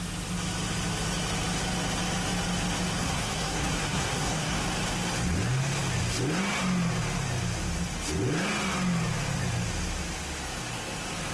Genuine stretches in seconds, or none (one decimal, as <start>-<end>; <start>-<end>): 0.0-3.0; 4.6-11.3